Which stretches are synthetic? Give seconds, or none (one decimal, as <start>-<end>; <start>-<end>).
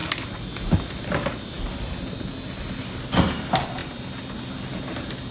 none